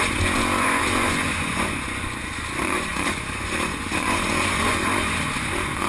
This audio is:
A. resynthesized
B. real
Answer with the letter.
A